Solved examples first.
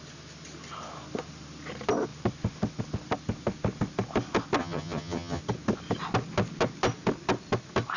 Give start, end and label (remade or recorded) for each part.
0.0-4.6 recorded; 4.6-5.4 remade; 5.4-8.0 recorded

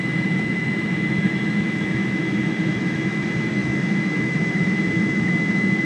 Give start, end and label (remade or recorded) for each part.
0.0-5.8 remade

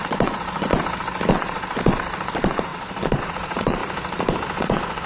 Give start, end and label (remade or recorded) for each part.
0.0-0.7 remade; 0.7-1.3 recorded; 1.3-3.8 remade; 3.8-4.6 recorded; 4.6-5.1 remade

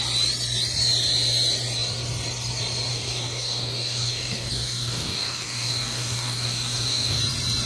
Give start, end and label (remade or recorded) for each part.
0.0-2.9 recorded; 2.9-7.2 remade; 7.2-7.7 recorded

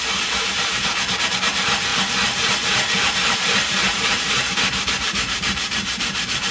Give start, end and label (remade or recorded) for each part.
0.0-1.9 remade; 1.9-3.1 recorded; 3.1-6.5 remade